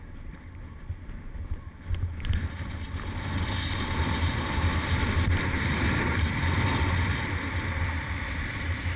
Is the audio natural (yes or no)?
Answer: yes